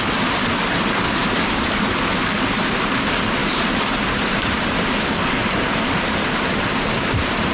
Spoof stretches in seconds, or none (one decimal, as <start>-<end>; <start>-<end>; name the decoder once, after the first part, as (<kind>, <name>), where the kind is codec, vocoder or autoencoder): 1.2-2.1 (vocoder, BigVGAN v2); 3.4-7.5

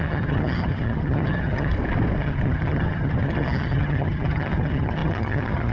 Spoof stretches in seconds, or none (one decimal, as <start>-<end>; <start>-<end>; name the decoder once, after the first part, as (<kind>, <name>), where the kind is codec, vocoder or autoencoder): 0.0-1.7 (vocoder, HiFi-GAN); 2.2-5.7